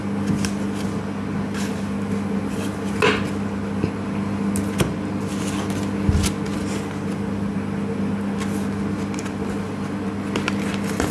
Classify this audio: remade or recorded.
recorded